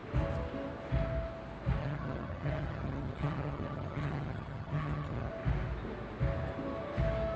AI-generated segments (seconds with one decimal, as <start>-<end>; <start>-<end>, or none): 1.8-5.3